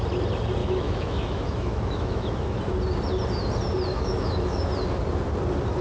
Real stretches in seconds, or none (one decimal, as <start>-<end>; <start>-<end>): 0.0-0.6; 2.6-3.9; 4.7-5.8